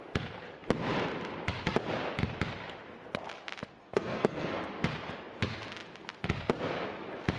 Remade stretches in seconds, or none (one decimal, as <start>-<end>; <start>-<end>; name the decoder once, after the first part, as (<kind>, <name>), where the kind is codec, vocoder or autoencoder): 3.8-4.7 (codec, SNAC)